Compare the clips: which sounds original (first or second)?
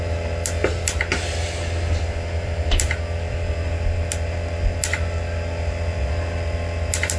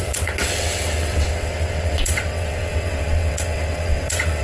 first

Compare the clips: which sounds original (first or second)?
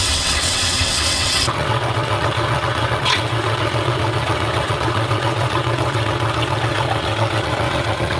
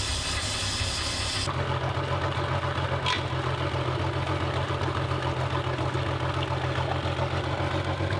second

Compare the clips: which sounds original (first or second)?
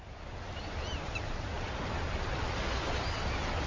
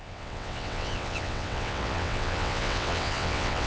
first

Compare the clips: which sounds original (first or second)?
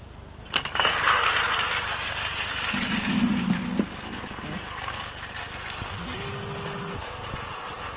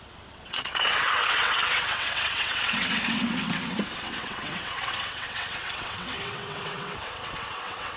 first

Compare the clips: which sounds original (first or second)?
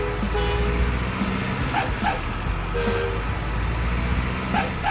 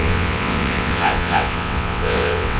first